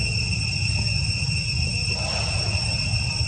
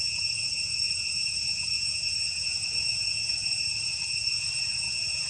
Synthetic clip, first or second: second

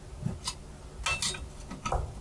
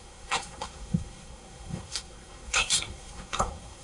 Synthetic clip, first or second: second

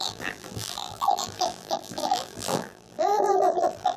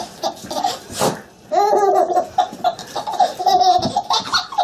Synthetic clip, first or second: first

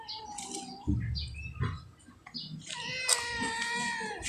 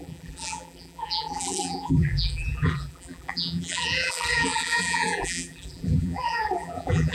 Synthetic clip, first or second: second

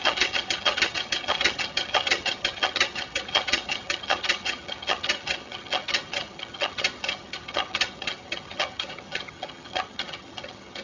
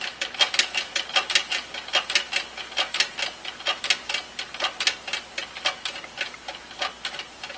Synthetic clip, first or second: first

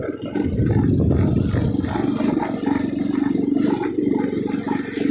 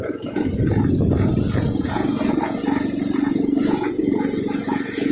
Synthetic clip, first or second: second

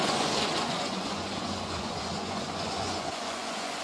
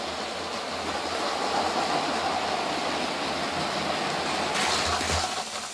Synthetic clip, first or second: first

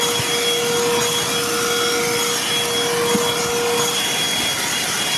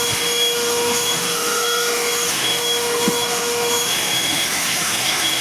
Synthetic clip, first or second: second